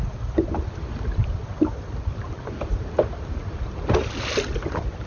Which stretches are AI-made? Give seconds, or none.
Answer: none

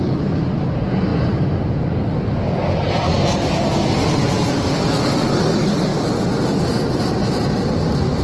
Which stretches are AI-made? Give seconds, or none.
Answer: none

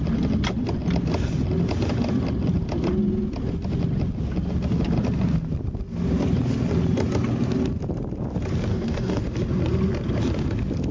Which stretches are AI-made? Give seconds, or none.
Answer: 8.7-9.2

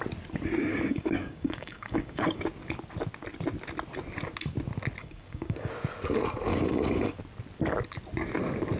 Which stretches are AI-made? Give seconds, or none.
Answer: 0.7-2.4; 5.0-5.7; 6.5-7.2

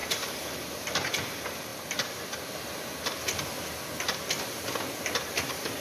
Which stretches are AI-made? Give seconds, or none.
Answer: 0.0-1.1